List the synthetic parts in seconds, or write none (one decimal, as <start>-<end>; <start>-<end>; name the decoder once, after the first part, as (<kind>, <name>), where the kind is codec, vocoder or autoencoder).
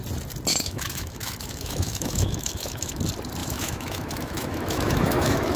0.5-3.0 (autoencoder, DAC-VAE); 3.4-5.6